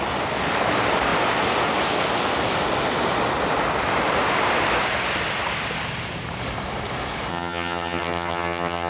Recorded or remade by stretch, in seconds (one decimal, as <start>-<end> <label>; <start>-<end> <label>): 0.0-7.3 recorded; 7.3-8.9 remade